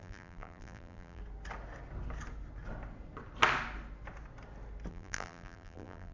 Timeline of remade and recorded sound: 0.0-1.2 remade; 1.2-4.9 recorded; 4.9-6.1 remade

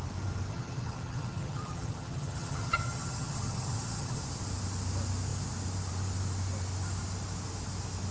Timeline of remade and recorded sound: 0.0-0.5 recorded; 0.5-4.2 remade; 4.2-8.1 recorded

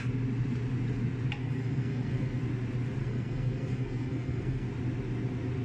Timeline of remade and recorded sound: 0.0-1.4 recorded; 1.4-2.4 remade; 2.4-3.0 recorded; 3.0-4.7 remade; 4.7-5.6 recorded

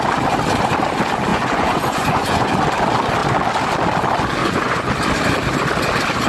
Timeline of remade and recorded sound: 0.0-1.3 recorded; 1.3-2.5 remade; 2.5-4.4 recorded; 4.4-4.9 remade; 4.9-6.3 recorded

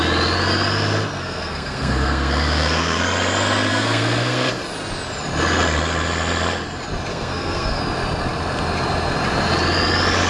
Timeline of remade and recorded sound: 0.0-1.2 recorded; 1.2-3.0 remade; 3.0-3.7 recorded; 3.7-4.5 remade; 4.5-7.1 recorded; 7.1-7.8 remade; 7.8-10.3 recorded

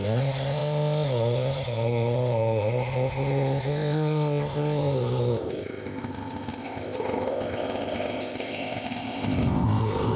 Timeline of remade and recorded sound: 0.0-10.2 remade

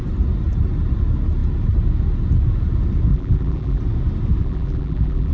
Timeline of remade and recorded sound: 0.0-3.1 recorded; 3.1-3.8 remade; 3.8-4.4 recorded; 4.4-5.3 remade